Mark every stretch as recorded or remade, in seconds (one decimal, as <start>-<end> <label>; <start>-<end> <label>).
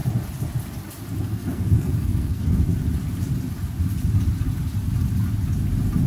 0.0-1.2 recorded; 1.2-2.7 remade; 2.7-6.1 recorded